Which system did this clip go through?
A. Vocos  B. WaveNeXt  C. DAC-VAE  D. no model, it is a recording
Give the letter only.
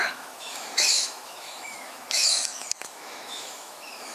C